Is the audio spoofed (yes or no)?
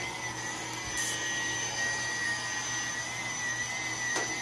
no